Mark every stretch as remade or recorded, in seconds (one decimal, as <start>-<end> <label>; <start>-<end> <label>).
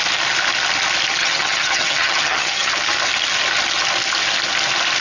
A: 0.0-1.2 recorded; 1.2-2.7 remade; 2.7-5.0 recorded